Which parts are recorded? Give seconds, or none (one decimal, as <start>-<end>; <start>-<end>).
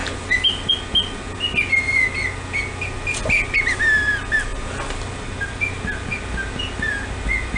0.0-7.6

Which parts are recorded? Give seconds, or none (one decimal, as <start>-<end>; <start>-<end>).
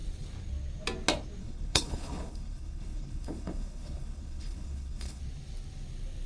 0.0-1.4; 5.2-6.3